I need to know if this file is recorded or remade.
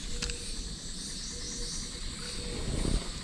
recorded